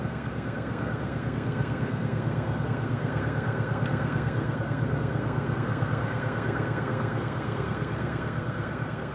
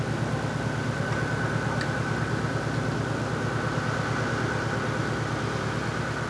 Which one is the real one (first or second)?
second